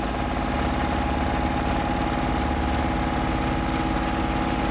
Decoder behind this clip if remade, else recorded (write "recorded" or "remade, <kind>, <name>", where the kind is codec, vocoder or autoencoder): recorded